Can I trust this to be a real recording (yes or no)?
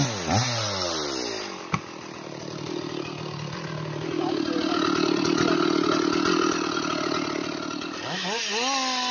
yes